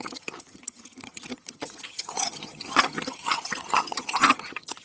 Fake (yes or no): yes